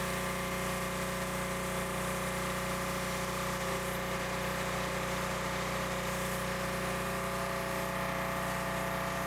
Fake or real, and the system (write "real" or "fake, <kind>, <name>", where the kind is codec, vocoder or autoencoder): real